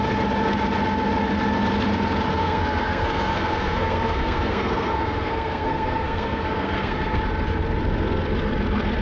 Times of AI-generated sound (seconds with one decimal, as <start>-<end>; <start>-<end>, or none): 2.3-7.2